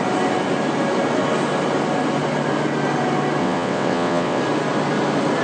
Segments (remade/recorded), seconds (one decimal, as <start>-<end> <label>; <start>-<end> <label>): 0.0-3.4 recorded; 3.4-4.4 remade; 4.4-5.4 recorded